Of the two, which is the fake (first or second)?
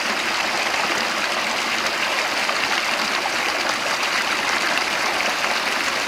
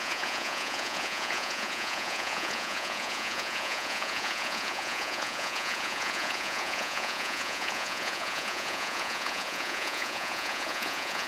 second